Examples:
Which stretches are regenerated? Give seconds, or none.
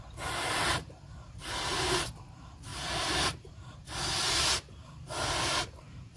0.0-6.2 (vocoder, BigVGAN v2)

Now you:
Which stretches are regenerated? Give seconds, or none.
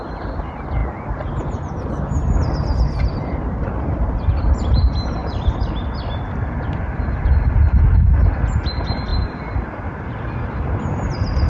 none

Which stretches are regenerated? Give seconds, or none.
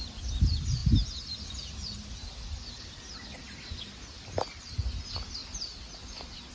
none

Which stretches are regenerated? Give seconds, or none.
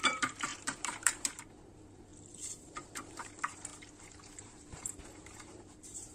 0.0-2.1 (vocoder, BigVGAN v2); 2.6-3.7; 4.4-6.1